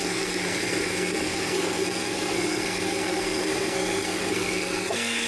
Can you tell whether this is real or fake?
fake